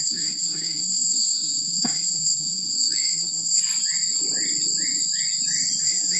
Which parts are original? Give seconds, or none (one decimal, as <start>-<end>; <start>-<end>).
3.6-5.8